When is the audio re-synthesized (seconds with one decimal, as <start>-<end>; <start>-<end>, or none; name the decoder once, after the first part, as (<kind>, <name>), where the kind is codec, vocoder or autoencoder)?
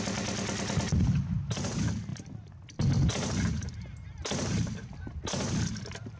none